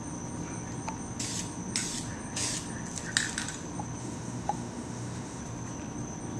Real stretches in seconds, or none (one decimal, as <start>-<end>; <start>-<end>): 0.0-4.0; 5.4-6.4

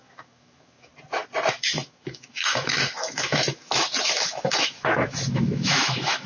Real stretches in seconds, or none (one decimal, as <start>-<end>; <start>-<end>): 0.9-1.5

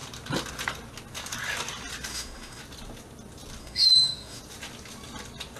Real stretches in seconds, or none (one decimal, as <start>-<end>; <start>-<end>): 0.0-2.1; 2.6-3.6; 4.4-5.6

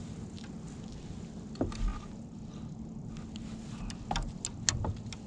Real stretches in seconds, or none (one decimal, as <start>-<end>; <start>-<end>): 0.0-5.3